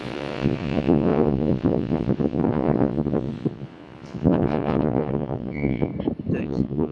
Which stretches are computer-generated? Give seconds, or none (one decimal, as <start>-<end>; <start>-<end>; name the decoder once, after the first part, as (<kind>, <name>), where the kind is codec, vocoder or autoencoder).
0.0-5.9 (vocoder, Vocos); 6.4-6.9